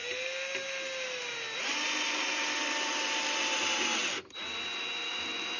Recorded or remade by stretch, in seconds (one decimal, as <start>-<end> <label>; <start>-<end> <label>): 0.0-5.6 recorded